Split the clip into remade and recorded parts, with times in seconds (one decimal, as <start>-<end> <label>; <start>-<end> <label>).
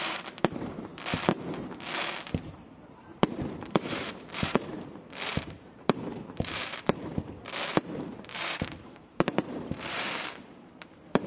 0.0-0.9 remade; 0.9-2.7 recorded; 2.7-4.7 remade; 4.7-5.4 recorded; 5.4-7.1 remade; 7.1-7.7 recorded; 7.7-11.3 remade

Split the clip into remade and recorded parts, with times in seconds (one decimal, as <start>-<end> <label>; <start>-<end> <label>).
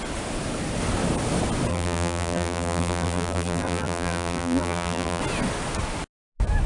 0.0-1.7 recorded; 1.7-5.2 remade; 5.2-6.7 recorded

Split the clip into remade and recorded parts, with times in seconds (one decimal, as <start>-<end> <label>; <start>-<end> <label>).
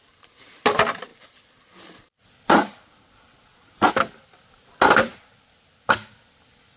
0.0-1.1 recorded; 1.1-2.8 remade; 2.8-6.8 recorded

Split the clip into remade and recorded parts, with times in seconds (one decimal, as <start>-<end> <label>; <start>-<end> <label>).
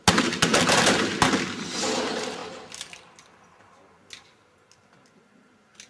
0.0-5.9 recorded